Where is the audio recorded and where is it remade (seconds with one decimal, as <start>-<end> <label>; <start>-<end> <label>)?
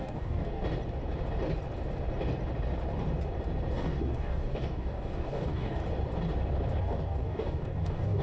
0.0-0.6 remade; 0.6-3.7 recorded; 3.7-5.8 remade; 5.8-6.8 recorded; 6.8-8.2 remade